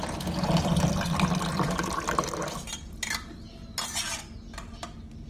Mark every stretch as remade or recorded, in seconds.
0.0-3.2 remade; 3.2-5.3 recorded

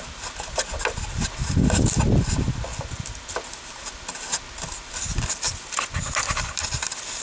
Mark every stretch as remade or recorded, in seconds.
0.0-7.2 recorded

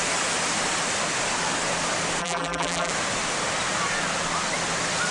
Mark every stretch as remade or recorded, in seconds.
0.0-2.2 recorded; 2.2-2.9 remade; 2.9-5.1 recorded

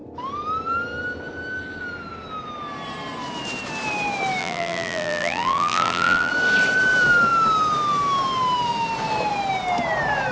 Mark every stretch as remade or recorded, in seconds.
0.0-4.4 recorded; 4.4-6.3 remade; 6.3-10.3 recorded

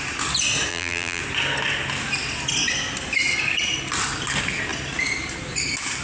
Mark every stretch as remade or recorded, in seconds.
0.0-0.7 recorded; 0.7-1.2 remade; 1.2-6.0 recorded